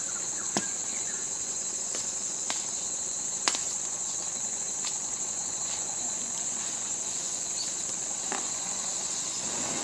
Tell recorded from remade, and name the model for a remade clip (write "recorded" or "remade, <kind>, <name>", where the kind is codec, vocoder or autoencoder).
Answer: remade, vocoder, Vocos